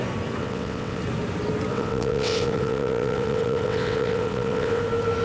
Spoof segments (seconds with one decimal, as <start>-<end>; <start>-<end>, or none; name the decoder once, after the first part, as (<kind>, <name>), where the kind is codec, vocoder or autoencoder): 0.4-1.0 (vocoder, WaveNeXt); 1.7-4.8